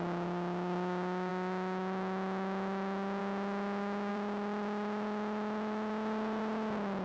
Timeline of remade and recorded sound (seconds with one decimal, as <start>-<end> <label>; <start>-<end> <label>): 0.0-4.1 recorded; 4.1-6.4 remade; 6.4-7.0 recorded